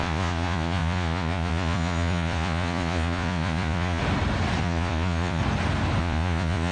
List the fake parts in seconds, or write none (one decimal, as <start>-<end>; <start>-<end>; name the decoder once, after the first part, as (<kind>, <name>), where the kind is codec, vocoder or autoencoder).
0.0-4.0 (vocoder, Vocos); 4.6-5.4; 6.0-6.7